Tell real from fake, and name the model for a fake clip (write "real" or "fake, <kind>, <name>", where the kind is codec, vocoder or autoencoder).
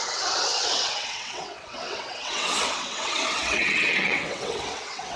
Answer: fake, vocoder, WaveNeXt